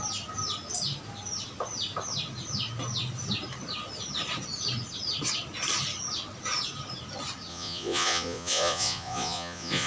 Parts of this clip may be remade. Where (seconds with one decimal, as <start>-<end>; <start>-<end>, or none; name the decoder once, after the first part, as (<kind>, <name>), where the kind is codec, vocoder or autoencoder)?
7.5-9.9 (vocoder, Vocos)